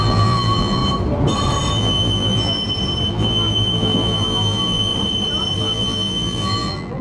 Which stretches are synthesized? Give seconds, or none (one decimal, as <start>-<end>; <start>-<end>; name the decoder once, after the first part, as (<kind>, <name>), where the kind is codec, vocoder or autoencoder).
0.0-0.8 (vocoder, BigVGAN v2); 1.7-2.6; 3.1-4.9; 5.6-7.0